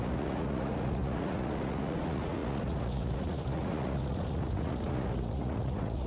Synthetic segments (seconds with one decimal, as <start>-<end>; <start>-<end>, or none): 0.0-6.1